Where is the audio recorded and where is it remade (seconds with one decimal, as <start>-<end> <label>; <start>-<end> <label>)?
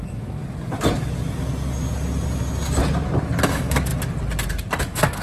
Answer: 0.0-0.4 remade; 0.4-3.5 recorded; 3.5-3.9 remade; 3.9-4.8 recorded; 4.8-5.2 remade